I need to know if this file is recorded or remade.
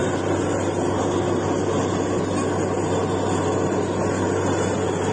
recorded